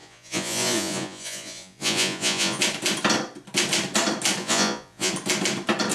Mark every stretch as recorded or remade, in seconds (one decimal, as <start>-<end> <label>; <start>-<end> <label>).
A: 0.0-2.6 remade; 2.6-4.4 recorded; 4.4-5.1 remade; 5.1-5.9 recorded

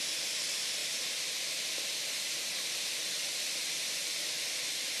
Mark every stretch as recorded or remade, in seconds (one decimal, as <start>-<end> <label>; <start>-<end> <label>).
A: 0.0-5.0 recorded